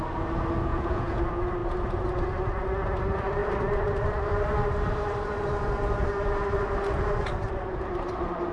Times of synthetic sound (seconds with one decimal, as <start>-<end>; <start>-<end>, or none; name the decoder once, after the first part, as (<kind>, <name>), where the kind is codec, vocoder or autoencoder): 0.7-1.2 (vocoder, Vocos)